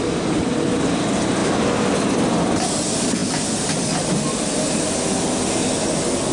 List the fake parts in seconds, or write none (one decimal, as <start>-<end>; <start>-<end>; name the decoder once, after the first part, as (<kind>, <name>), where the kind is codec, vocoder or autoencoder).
none